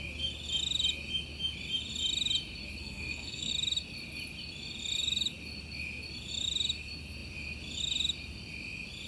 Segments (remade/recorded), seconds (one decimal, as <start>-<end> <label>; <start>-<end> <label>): 0.0-2.8 recorded; 2.8-3.5 remade; 3.5-9.1 recorded